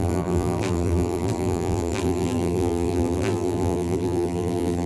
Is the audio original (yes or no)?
no